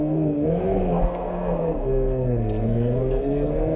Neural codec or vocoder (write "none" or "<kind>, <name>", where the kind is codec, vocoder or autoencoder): codec, SNAC